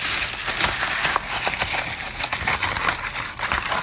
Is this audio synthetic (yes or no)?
no